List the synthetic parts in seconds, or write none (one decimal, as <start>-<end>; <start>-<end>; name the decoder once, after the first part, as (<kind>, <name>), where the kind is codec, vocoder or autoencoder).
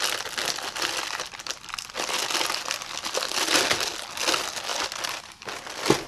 none